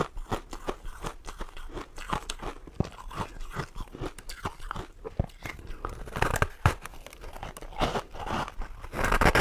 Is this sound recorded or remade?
recorded